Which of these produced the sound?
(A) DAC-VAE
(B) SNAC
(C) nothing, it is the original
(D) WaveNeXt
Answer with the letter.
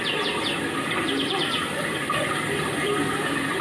C